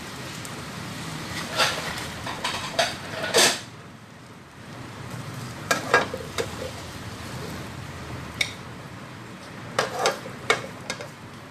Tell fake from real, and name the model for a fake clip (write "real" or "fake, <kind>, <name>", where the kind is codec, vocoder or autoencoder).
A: fake, vocoder, BigVGAN v2